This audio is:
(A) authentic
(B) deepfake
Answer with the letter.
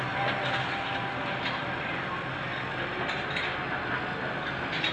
A